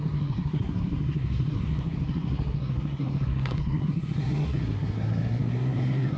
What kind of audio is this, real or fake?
fake